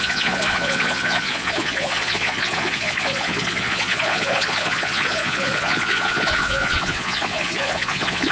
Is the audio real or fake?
fake